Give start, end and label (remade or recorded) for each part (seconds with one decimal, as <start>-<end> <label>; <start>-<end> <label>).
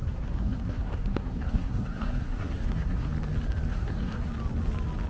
0.0-3.1 remade; 3.1-3.7 recorded; 3.7-4.3 remade; 4.3-5.1 recorded